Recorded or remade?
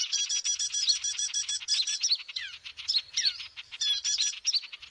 remade